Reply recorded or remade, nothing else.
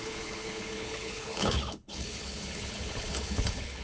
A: remade